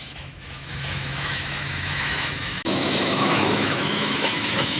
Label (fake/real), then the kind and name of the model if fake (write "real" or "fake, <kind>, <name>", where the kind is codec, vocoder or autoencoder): fake, autoencoder, DAC-VAE